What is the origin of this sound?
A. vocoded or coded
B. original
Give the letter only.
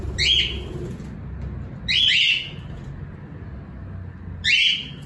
B